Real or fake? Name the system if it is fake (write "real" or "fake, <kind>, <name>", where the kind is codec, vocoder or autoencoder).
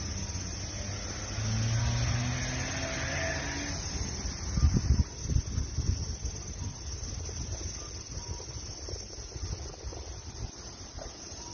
real